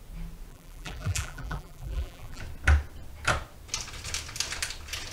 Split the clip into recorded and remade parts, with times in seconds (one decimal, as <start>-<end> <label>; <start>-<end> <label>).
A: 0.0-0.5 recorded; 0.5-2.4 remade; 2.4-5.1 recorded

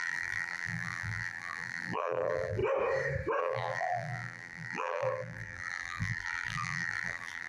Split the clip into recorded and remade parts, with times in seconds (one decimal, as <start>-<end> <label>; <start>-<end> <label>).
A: 0.0-2.6 remade; 2.6-3.4 recorded; 3.4-7.5 remade

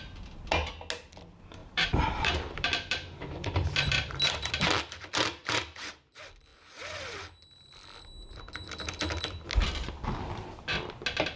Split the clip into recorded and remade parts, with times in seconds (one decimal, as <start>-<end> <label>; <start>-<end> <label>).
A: 0.0-1.6 recorded; 1.6-4.5 remade; 4.5-11.4 recorded

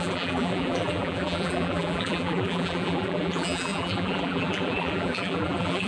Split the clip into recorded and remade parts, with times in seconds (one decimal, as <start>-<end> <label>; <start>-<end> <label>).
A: 0.0-5.9 remade